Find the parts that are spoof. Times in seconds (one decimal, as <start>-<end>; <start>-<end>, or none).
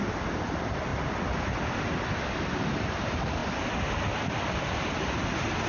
none